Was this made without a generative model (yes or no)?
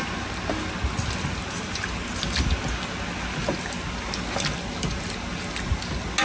yes